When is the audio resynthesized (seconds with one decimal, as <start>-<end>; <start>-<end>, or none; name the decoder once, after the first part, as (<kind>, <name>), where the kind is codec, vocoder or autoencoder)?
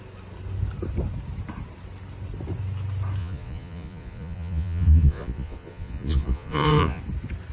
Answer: 3.2-7.0 (vocoder, Vocos)